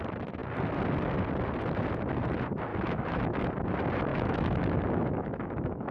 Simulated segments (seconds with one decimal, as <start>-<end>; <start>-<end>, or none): 2.7-3.5; 4.1-5.9